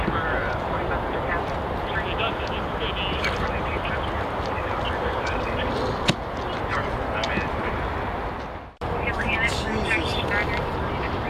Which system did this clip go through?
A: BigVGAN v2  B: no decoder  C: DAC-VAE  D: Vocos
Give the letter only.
B